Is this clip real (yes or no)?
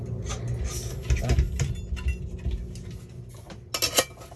yes